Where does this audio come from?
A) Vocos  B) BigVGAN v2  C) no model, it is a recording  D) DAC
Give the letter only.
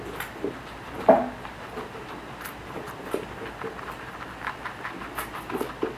C